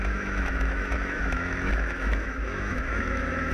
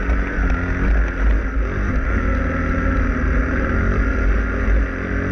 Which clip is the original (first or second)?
second